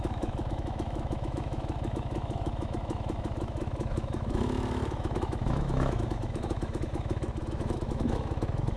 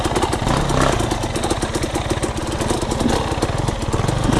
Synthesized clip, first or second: first